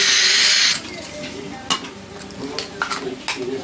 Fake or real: real